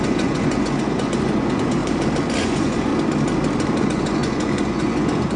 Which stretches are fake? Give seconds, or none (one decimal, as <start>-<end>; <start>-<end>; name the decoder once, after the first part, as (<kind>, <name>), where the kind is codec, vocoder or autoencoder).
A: 0.0-1.8 (vocoder, Vocos); 2.4-2.9; 3.8-5.4